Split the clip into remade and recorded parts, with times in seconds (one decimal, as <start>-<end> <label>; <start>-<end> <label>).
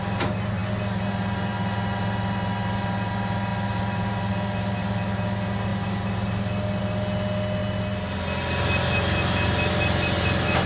0.0-10.7 recorded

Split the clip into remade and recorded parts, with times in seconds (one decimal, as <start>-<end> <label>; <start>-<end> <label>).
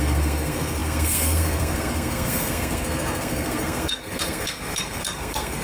0.0-5.6 remade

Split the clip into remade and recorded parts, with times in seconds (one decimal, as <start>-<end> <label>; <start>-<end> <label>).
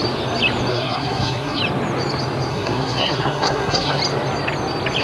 0.0-0.7 recorded; 0.7-1.6 remade; 1.6-2.5 recorded; 2.5-4.0 remade; 4.0-5.0 recorded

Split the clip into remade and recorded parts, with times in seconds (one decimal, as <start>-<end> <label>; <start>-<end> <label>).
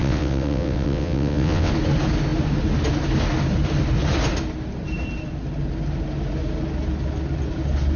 0.0-1.7 remade; 1.7-8.0 recorded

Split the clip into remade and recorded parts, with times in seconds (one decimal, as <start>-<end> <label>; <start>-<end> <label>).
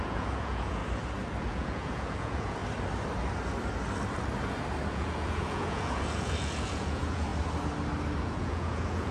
0.0-0.8 remade; 0.8-1.4 recorded; 1.4-2.6 remade; 2.6-4.9 recorded; 4.9-7.3 remade; 7.3-8.2 recorded; 8.2-9.1 remade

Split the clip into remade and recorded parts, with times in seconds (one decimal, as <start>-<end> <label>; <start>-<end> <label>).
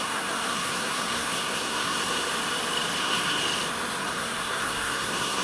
0.0-2.3 remade; 2.3-3.0 recorded; 3.0-3.4 remade; 3.4-4.0 recorded; 4.0-5.4 remade